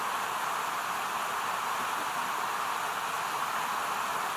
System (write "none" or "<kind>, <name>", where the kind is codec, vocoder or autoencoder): none